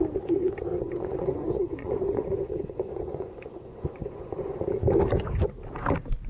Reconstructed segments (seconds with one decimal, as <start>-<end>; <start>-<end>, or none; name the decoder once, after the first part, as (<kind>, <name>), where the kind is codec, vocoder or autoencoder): 0.7-4.5 (vocoder, Vocos)